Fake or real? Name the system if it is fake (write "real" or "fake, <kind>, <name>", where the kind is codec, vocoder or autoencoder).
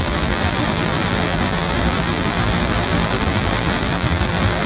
fake, vocoder, BigVGAN v2